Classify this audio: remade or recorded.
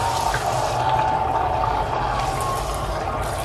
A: recorded